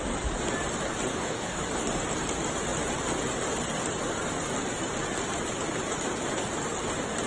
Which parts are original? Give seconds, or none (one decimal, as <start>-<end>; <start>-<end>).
0.0-1.1; 1.6-7.3